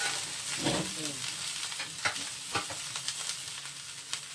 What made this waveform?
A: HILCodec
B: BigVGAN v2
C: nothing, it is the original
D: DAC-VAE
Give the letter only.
C